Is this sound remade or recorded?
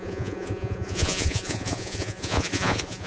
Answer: remade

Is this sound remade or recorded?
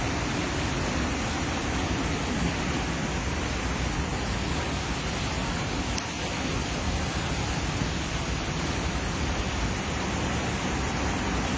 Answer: recorded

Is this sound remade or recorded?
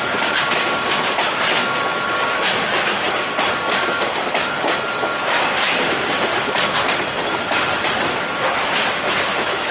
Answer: recorded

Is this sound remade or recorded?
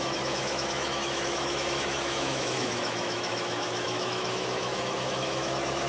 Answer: remade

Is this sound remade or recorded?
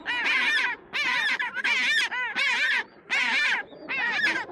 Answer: recorded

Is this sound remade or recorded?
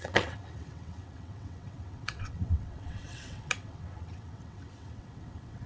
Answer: remade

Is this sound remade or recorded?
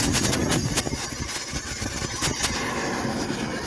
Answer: recorded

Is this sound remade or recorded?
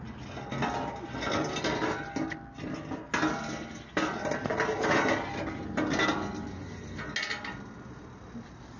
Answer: recorded